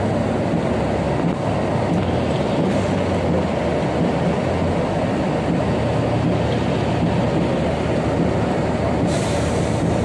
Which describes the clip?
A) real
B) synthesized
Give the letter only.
A